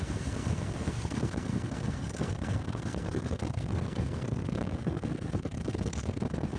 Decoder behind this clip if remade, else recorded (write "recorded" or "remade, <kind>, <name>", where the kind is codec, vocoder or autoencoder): remade, codec, SNAC